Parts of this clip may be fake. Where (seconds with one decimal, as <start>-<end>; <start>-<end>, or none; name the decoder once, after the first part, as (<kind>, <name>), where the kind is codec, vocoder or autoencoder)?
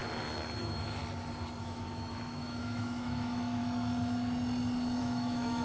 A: 0.6-1.0 (autoencoder, DAC-VAE); 1.6-3.6; 5.0-5.6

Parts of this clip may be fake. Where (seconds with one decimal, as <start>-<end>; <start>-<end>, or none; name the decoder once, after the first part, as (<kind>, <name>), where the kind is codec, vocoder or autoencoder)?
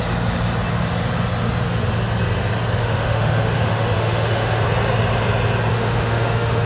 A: 2.8-4.6 (autoencoder, DAC-VAE); 5.7-6.7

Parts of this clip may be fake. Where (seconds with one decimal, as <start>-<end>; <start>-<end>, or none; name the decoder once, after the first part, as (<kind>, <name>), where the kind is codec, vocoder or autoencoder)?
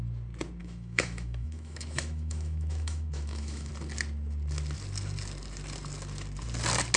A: 0.6-3.7 (autoencoder, DAC-VAE)